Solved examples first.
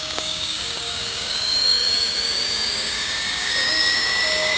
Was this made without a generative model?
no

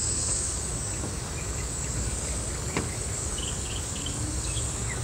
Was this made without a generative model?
no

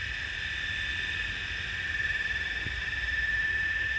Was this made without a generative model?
yes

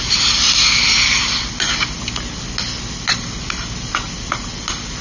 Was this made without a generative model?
yes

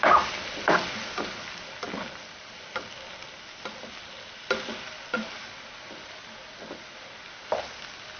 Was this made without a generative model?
yes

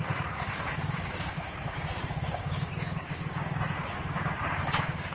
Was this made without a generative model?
no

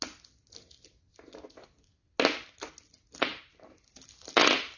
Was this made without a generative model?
yes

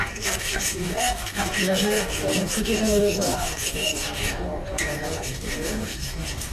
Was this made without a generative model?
no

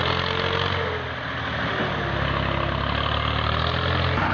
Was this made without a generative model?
yes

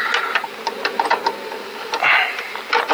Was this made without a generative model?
yes